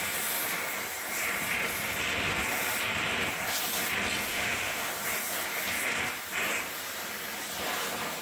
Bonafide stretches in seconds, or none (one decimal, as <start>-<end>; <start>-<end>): 0.0-4.3; 4.9-8.2